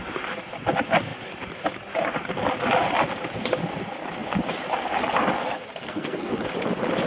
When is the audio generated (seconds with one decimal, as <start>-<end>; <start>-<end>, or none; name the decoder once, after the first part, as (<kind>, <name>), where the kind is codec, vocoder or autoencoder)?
5.8-6.4 (codec, SNAC)